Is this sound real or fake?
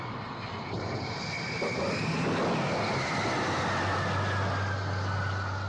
real